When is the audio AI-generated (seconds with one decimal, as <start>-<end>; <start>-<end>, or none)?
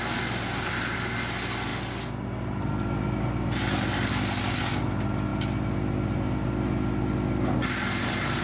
none